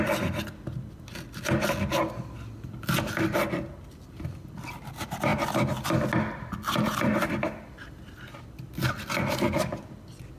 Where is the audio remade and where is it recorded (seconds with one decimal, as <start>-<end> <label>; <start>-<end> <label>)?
0.0-10.4 recorded